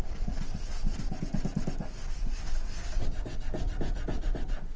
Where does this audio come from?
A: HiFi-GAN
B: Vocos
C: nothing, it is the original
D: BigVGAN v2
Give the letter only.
C